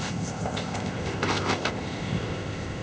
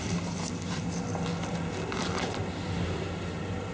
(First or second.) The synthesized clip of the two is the first